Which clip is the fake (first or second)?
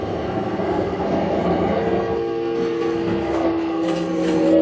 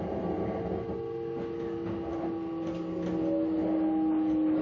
first